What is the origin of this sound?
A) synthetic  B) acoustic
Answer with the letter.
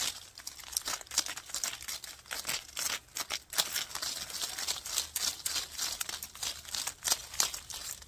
B